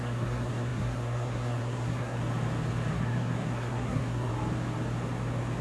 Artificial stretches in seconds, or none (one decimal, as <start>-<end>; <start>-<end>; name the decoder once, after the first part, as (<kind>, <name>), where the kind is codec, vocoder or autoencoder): 0.0-2.2 (codec, SNAC); 2.9-4.3